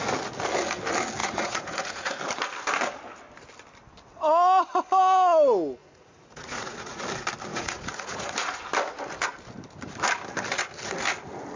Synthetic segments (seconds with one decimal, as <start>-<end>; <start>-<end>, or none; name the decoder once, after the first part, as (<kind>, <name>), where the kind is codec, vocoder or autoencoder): 1.2-2.2 (vocoder, Vocos); 5.8-7.0; 7.5-8.6